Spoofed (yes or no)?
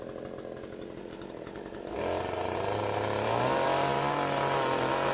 no